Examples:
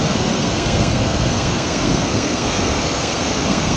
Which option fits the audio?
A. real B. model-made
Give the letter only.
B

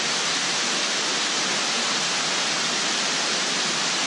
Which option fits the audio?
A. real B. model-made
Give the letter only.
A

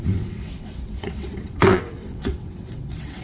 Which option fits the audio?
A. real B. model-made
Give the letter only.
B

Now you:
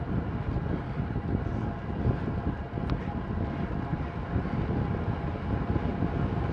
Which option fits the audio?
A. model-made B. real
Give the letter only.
B